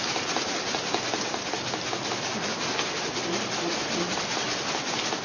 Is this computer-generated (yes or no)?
no